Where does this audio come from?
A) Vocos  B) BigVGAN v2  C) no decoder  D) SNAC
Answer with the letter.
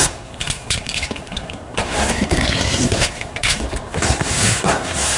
D